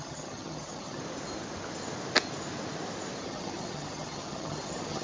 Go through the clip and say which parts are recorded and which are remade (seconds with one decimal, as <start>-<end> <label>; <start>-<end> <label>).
0.0-1.0 remade; 1.0-3.2 recorded; 3.2-5.0 remade

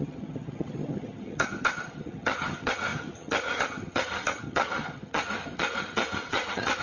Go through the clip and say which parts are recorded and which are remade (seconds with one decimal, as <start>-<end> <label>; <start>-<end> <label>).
0.0-6.8 remade

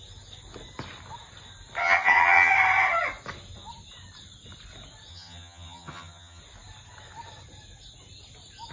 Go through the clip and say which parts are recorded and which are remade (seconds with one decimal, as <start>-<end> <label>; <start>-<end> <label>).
0.0-1.8 recorded; 1.8-2.5 remade; 2.5-5.1 recorded; 5.1-6.4 remade; 6.4-8.7 recorded